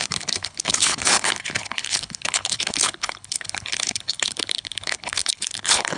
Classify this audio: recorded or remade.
remade